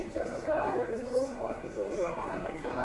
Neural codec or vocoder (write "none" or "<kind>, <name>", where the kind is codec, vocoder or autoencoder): codec, SNAC